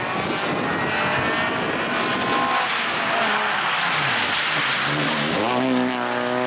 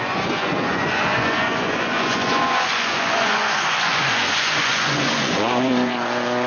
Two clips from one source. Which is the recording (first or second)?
first